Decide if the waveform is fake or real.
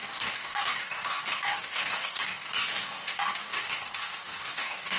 fake